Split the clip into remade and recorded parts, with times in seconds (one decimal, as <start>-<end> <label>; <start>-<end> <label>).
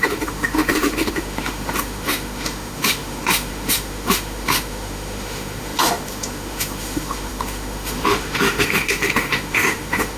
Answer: 0.0-10.2 remade